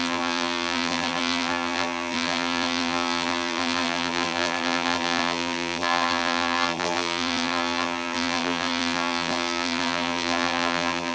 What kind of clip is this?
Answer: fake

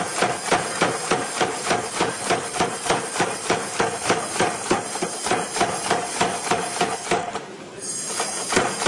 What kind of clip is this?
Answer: fake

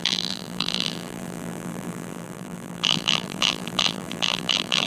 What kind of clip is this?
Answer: fake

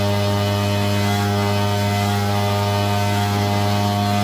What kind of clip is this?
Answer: real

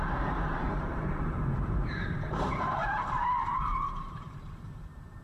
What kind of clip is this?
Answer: fake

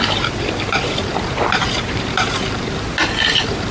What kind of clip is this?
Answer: fake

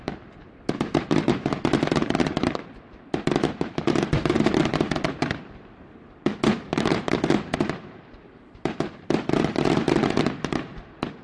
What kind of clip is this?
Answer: fake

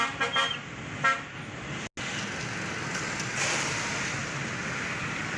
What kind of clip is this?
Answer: real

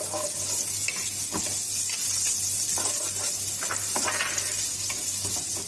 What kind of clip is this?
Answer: real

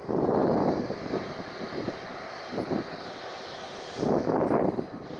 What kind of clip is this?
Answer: real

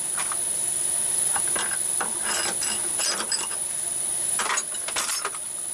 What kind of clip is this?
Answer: real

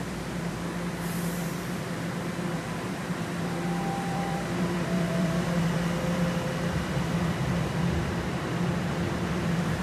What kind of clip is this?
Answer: fake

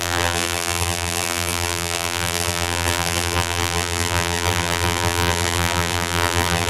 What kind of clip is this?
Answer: fake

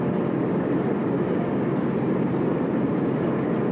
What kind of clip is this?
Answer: real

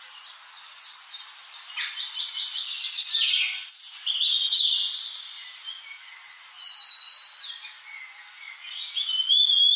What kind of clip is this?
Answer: real